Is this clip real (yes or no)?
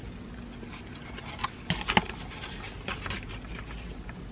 yes